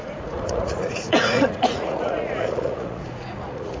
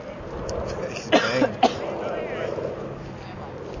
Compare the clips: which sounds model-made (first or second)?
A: first